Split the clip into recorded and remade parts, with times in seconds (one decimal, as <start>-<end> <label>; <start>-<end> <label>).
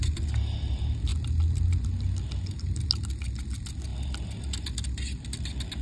0.0-5.8 recorded